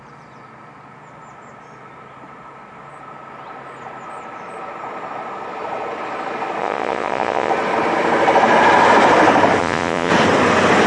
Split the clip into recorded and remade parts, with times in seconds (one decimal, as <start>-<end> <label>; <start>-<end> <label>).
0.0-6.6 recorded; 6.6-7.5 remade; 7.5-9.6 recorded; 9.6-10.1 remade; 10.1-10.9 recorded